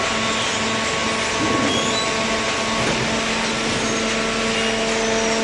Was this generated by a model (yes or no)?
no